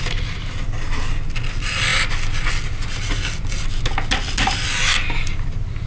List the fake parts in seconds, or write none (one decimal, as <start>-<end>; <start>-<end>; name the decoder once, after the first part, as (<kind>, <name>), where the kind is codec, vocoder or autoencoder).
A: none